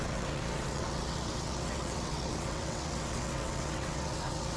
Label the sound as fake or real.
fake